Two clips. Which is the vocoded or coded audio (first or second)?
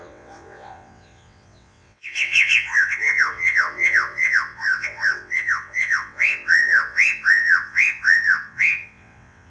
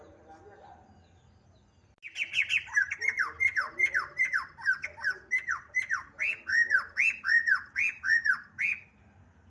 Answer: first